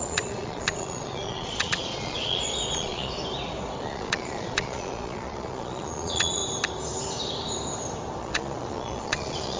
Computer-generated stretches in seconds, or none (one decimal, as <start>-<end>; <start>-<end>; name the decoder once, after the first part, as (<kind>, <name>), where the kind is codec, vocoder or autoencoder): 0.0-3.1 (vocoder, Vocos); 3.8-6.4; 8.2-9.6

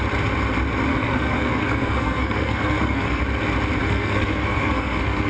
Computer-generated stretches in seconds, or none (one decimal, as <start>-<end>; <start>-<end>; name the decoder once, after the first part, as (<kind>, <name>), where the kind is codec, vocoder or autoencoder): 0.9-3.2 (codec, SNAC); 3.8-5.3

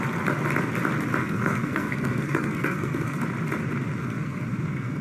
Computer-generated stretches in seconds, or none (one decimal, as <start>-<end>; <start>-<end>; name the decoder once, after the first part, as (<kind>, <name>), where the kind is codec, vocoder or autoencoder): 1.2-3.2 (codec, SNAC); 4.0-5.0

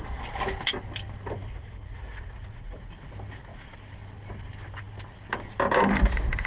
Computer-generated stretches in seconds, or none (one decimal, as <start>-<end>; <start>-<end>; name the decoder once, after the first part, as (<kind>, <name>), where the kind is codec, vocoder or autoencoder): 1.5-2.9 (vocoder, Vocos)